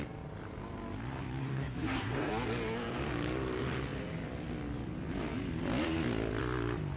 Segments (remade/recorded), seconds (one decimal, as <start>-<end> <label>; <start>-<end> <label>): 0.0-1.4 recorded; 1.4-2.3 remade; 2.3-7.0 recorded